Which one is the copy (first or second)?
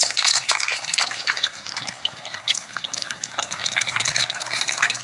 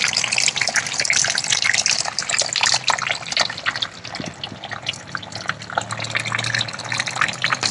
first